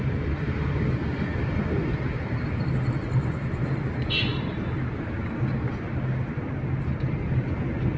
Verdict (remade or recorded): recorded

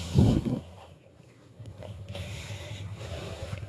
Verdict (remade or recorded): remade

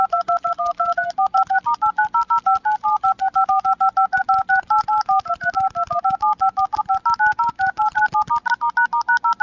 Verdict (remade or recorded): recorded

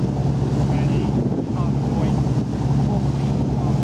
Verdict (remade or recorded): recorded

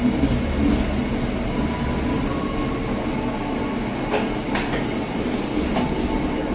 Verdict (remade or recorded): recorded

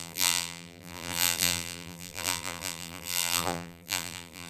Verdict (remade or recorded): remade